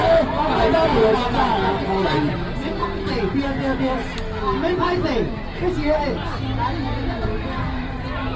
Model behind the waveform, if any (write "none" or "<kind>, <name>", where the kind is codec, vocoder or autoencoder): none